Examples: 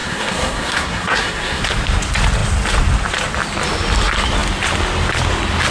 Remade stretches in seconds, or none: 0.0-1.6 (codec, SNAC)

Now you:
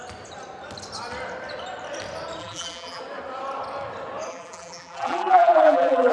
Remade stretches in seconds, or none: 2.4-3.0 (vocoder, BigVGAN v2); 4.3-6.1